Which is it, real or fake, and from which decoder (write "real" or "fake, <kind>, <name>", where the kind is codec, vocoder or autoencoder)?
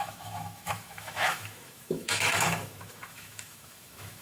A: fake, autoencoder, DAC-VAE